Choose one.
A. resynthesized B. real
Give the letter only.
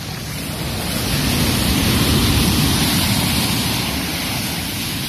B